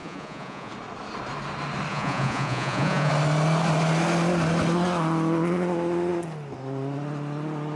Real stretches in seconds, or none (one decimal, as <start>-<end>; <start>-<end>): 0.7-1.9; 3.1-7.8